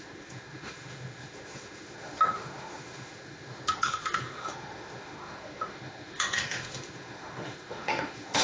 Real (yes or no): no